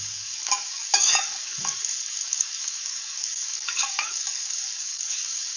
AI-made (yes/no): yes